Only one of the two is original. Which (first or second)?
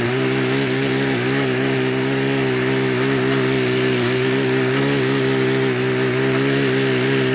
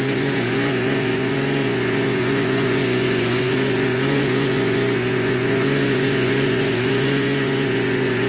first